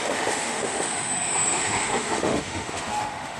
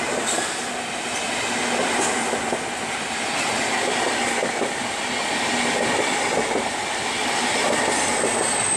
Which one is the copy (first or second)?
first